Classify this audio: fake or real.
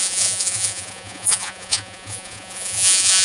fake